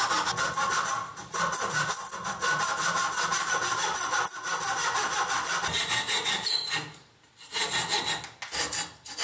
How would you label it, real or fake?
real